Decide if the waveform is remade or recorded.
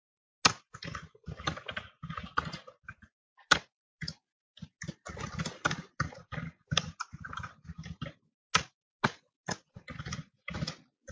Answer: recorded